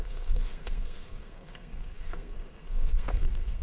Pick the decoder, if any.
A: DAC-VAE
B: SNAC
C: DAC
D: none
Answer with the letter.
B